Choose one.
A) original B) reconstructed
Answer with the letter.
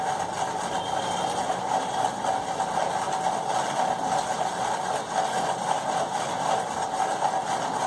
A